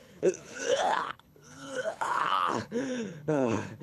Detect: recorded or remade remade